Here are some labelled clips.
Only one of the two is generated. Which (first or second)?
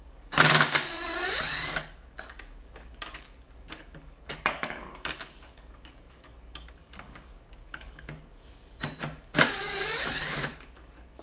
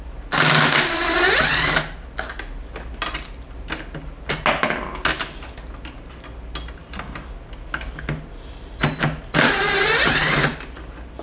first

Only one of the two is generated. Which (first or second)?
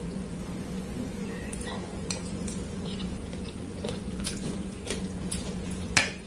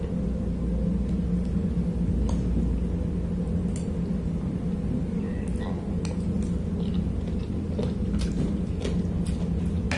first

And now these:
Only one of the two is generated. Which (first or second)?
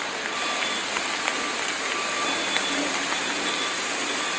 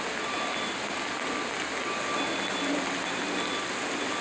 first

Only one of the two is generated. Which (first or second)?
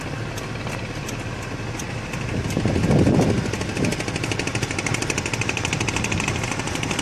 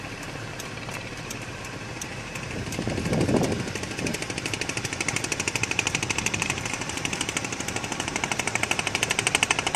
second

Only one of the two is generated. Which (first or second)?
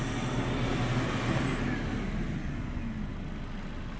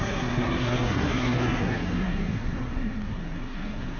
second